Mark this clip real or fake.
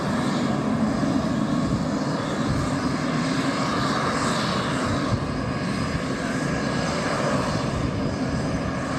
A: real